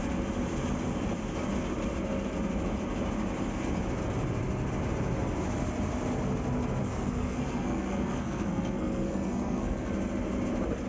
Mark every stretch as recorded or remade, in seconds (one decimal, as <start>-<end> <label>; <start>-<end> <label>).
0.0-6.8 recorded; 6.8-9.9 remade; 9.9-10.9 recorded